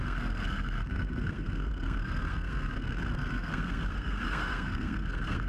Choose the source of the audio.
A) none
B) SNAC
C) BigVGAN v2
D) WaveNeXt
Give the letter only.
B